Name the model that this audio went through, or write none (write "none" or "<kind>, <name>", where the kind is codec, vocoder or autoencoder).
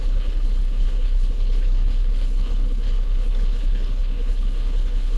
codec, HILCodec